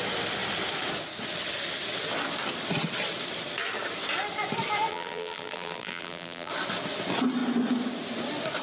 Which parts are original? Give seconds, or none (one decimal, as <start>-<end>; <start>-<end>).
0.0-4.9; 6.5-8.6